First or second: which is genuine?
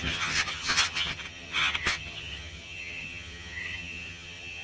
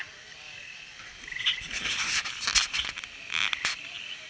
second